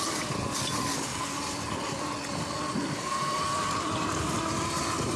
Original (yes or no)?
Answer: yes